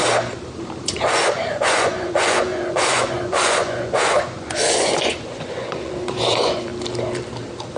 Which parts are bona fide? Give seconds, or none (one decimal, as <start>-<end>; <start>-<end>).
0.0-0.8; 6.7-7.8